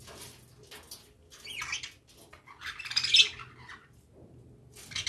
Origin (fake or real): real